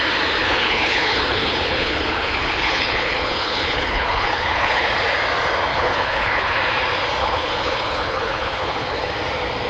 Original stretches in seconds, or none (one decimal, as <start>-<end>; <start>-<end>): 0.0-0.4; 4.8-5.7; 6.6-7.2; 9.1-9.7